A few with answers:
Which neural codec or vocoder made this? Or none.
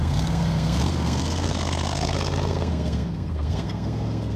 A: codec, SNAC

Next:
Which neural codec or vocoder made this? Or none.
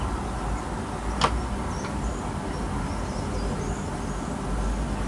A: none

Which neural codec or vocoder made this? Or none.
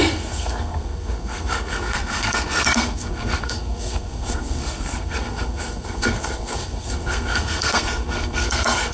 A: codec, SNAC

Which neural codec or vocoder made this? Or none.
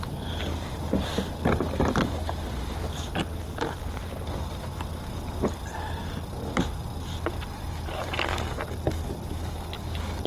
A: none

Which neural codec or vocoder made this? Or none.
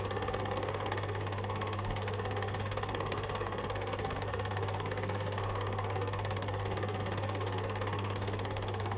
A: codec, SNAC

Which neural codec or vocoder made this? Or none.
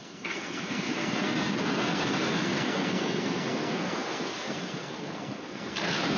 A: codec, SNAC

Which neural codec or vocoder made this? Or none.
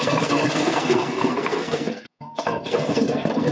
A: codec, SNAC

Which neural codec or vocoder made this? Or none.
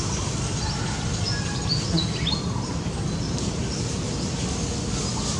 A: none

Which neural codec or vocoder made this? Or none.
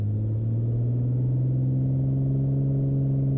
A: none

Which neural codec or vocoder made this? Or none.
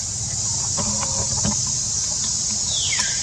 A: none